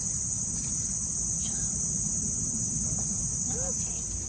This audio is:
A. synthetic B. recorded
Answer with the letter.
B